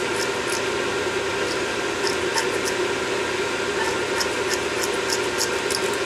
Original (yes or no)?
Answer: yes